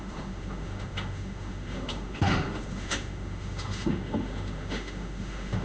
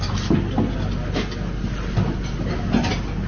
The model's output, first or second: first